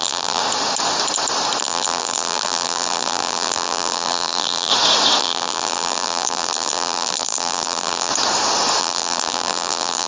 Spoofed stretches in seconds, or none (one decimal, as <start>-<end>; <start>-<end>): 0.0-0.4; 1.6-4.7; 5.2-8.1; 8.8-10.1